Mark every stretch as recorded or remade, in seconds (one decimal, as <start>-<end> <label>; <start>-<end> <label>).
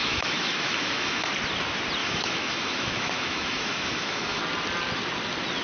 0.0-1.3 remade; 1.3-2.0 recorded; 2.0-4.4 remade; 4.4-5.6 recorded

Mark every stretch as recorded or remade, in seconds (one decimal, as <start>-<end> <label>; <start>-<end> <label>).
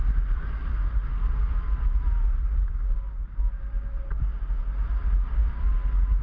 0.0-0.7 recorded; 0.7-1.2 remade; 1.2-6.2 recorded